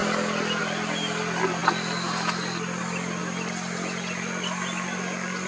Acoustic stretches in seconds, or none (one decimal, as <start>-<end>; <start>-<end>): 0.0-5.5